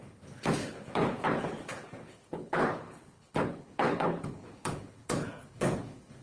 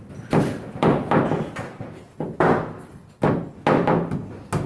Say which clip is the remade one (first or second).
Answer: first